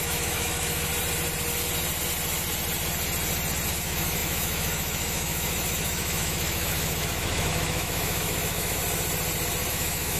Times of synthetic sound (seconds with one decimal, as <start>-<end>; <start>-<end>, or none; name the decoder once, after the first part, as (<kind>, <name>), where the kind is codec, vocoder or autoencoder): 0.0-0.9 (autoencoder, DAC-VAE); 3.7-8.8; 9.7-10.2